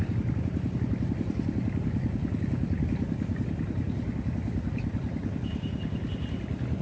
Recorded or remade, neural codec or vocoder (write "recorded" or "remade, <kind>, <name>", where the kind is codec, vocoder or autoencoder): recorded